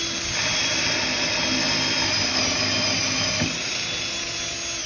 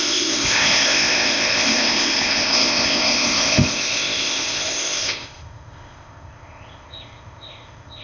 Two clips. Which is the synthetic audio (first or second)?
second